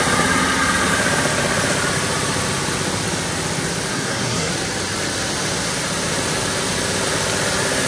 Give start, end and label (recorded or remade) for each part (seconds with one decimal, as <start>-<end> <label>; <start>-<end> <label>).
0.0-3.9 recorded; 3.9-4.5 remade; 4.5-7.9 recorded